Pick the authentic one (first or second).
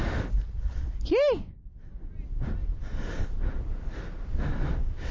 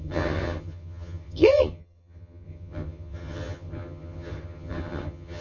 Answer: first